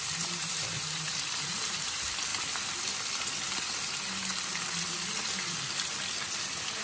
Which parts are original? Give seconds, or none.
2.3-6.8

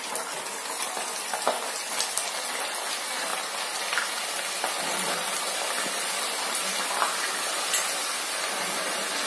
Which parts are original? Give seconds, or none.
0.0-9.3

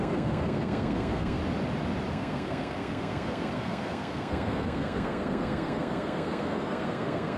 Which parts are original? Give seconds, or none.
1.4-2.1